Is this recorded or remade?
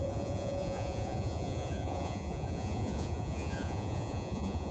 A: remade